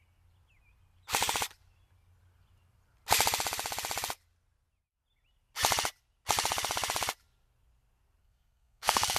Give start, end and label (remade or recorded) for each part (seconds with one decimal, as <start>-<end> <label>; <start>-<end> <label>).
0.0-8.2 recorded; 8.2-9.2 remade